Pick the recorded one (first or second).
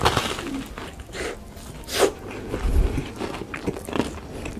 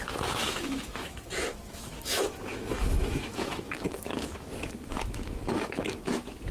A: first